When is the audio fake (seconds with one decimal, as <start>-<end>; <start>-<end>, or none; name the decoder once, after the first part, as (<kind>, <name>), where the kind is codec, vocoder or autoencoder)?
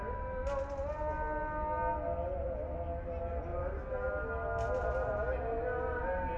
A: none